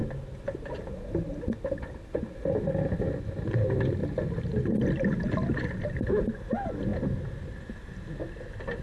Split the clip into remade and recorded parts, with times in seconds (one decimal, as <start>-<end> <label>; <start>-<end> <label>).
0.0-8.8 recorded